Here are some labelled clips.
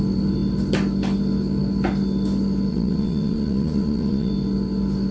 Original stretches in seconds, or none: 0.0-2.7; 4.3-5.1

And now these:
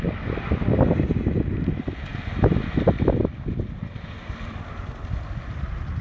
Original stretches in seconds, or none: 0.0-6.0

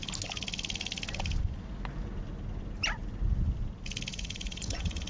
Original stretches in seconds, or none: 0.0-4.1

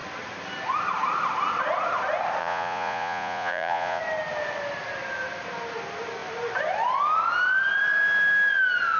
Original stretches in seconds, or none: 0.0-2.4; 4.0-9.0

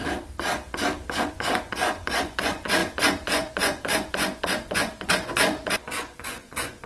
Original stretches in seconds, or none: 0.0-1.3

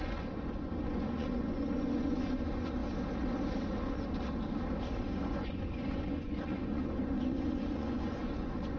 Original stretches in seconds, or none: 2.8-5.0

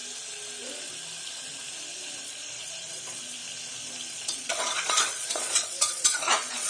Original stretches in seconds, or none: 0.0-2.2; 3.4-4.1

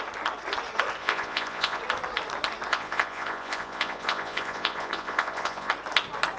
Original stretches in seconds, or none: 0.0-1.0; 1.8-2.7; 5.7-6.4